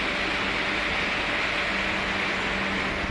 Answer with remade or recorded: recorded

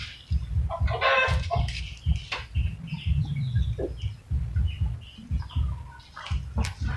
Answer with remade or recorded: recorded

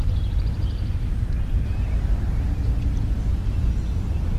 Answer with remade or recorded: recorded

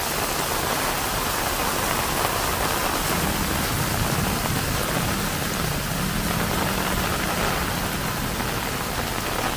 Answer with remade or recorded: recorded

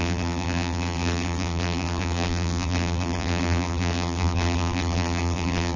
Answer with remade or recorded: remade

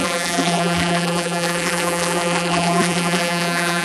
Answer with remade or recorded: remade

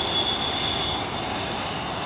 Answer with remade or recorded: recorded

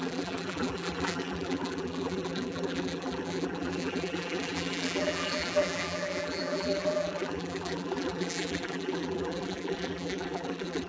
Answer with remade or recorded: remade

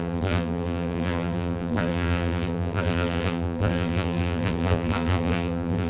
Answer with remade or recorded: remade